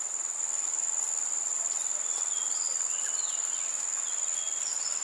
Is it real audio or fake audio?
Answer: real